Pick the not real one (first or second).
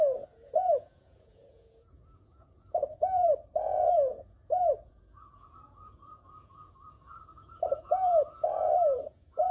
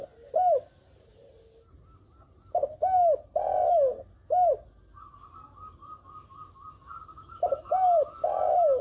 first